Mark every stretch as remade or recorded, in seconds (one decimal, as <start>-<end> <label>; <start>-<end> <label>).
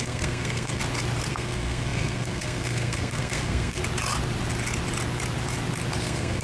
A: 0.0-0.8 remade; 0.8-1.3 recorded; 1.3-3.8 remade; 3.8-6.0 recorded; 6.0-6.4 remade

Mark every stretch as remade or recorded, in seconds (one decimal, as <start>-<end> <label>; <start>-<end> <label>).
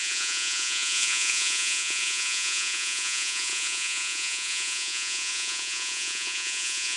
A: 0.0-7.0 remade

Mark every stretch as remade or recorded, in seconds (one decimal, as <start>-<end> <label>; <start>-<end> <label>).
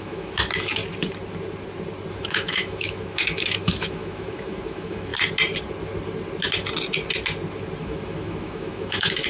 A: 0.0-0.8 remade; 0.8-2.1 recorded; 2.1-5.1 remade; 5.1-7.8 recorded; 7.8-9.3 remade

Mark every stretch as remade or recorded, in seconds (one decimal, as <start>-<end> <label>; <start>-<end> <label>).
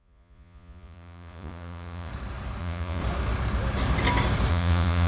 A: 0.0-2.1 remade; 2.1-2.6 recorded; 2.6-3.0 remade; 3.0-4.5 recorded; 4.5-5.1 remade